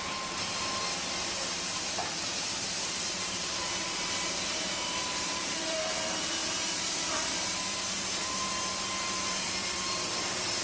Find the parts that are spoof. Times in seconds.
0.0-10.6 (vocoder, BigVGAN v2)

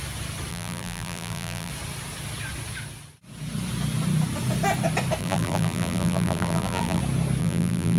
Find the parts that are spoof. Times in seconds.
0.5-1.7 (vocoder, BigVGAN v2); 5.2-7.0; 7.4-8.0

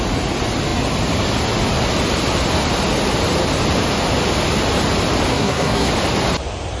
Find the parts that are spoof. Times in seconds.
5.3-5.9 (codec, SNAC)

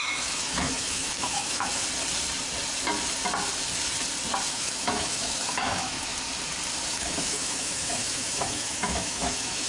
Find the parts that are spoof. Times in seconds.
0.0-1.7 (autoencoder, DAC-VAE); 4.5-6.1; 6.9-9.7

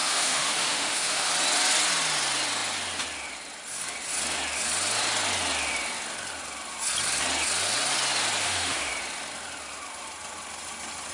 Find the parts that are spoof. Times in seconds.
0.0-1.3 (autoencoder, DAC-VAE); 8.4-8.9

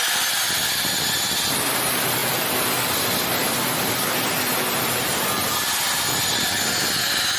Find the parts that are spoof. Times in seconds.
none

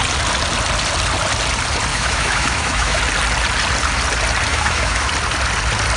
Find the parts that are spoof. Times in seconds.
1.9-3.0 (autoencoder, DAC-VAE); 4.5-5.1